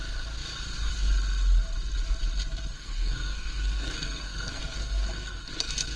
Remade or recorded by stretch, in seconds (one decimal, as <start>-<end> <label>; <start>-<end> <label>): 0.0-2.7 recorded; 2.7-6.0 remade